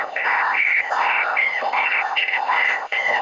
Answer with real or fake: fake